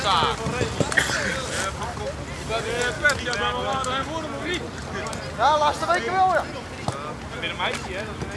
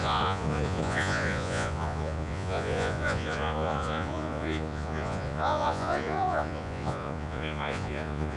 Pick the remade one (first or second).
second